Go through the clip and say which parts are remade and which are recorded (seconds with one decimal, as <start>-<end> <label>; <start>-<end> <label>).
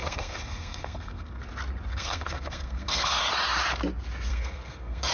0.0-1.4 remade; 1.4-1.9 recorded; 1.9-3.2 remade; 3.2-4.3 recorded; 4.3-5.1 remade